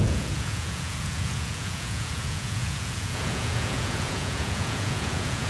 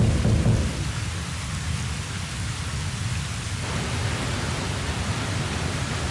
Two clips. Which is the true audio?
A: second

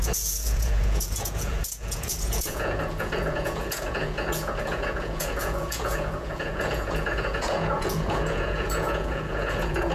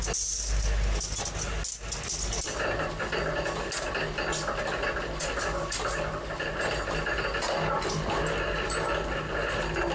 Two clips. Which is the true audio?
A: second